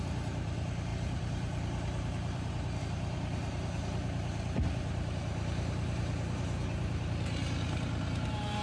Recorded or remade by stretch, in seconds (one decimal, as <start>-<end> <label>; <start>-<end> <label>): 0.0-8.6 remade